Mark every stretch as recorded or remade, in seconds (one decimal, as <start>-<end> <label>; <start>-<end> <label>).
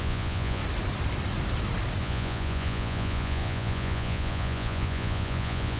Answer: 0.0-0.6 remade; 0.6-2.0 recorded; 2.0-5.8 remade